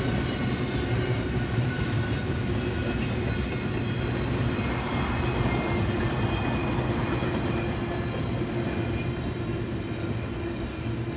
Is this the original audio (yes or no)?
yes